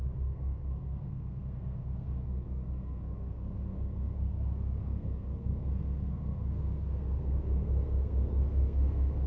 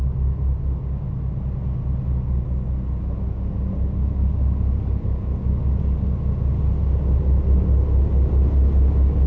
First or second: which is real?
second